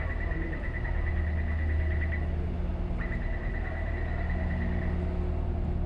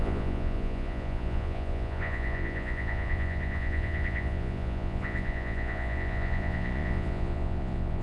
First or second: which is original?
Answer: first